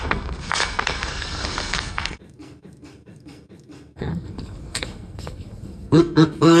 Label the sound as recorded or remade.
remade